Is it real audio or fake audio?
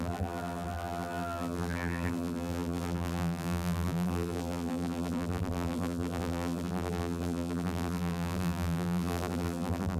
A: fake